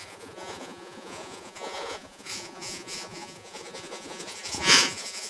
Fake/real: fake